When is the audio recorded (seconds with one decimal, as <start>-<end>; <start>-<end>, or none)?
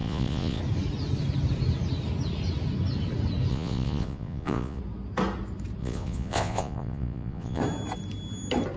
0.6-3.5; 4.8-5.8; 7.6-8.8